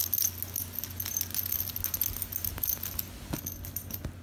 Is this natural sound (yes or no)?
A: yes